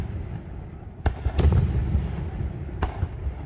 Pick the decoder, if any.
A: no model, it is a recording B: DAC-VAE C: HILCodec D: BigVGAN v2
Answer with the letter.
A